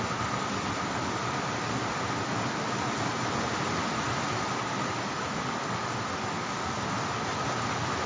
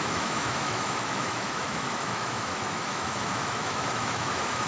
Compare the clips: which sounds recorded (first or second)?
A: first